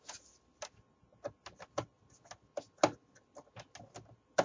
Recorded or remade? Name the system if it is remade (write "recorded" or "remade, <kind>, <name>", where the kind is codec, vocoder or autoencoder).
recorded